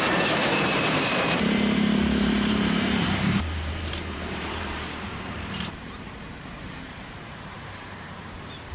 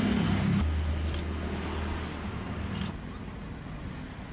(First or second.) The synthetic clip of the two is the first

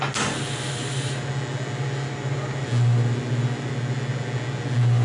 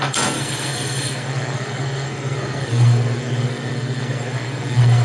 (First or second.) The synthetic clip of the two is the second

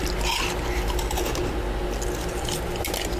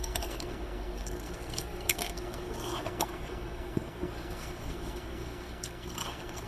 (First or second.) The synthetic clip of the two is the second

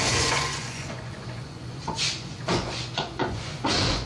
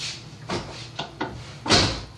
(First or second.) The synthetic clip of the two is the first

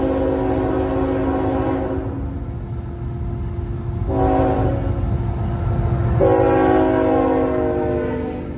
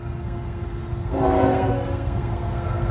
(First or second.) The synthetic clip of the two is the second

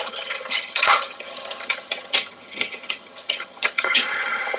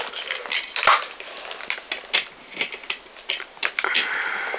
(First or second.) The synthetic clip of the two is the first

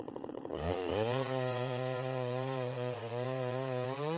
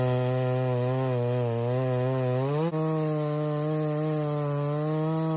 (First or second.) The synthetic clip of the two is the first